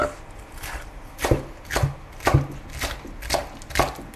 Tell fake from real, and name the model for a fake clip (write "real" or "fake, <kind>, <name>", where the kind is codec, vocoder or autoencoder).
real